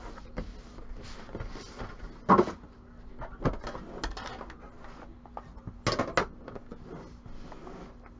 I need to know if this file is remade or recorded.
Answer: recorded